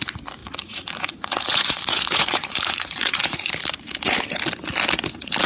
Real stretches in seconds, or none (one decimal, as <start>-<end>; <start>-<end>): 0.0-0.4; 3.5-5.5

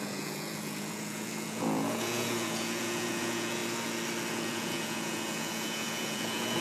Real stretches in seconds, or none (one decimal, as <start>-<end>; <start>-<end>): 3.6-4.3